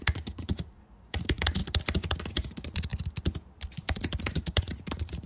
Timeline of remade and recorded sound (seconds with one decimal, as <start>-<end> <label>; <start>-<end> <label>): 0.0-1.6 remade; 1.6-2.2 recorded; 2.2-2.9 remade; 2.9-4.2 recorded; 4.2-5.3 remade